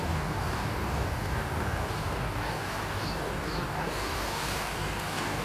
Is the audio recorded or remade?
remade